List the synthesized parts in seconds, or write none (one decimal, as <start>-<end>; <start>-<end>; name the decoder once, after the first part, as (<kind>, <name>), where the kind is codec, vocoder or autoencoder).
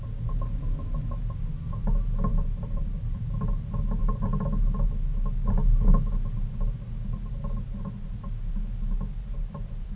2.3-3.3 (vocoder, BigVGAN v2)